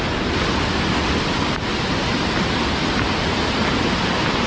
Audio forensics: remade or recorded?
recorded